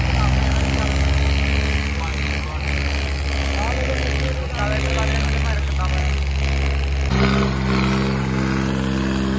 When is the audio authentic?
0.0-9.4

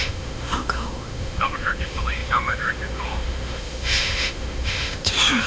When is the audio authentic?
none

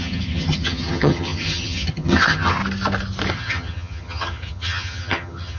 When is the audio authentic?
2.6-3.3

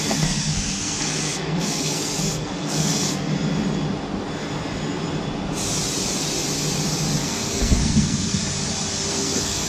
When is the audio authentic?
3.3-7.2; 8.4-9.1